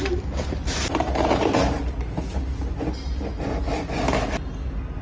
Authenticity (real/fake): real